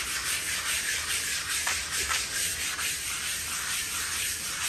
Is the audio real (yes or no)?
yes